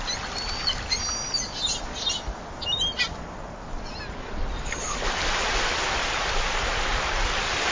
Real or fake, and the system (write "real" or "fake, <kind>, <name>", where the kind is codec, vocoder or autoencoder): real